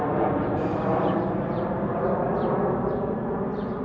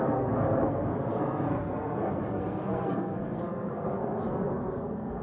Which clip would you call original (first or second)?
first